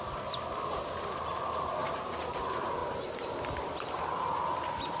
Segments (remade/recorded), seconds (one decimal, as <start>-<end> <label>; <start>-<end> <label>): 0.0-5.0 recorded